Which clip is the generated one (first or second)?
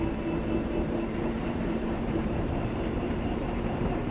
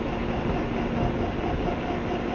first